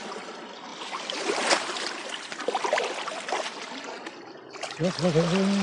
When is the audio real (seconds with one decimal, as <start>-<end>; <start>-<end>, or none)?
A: 0.0-5.6